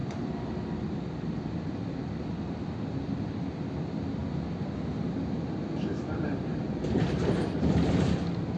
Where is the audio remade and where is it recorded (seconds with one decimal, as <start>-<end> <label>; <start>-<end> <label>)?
0.0-4.2 remade; 4.2-5.9 recorded; 5.9-8.6 remade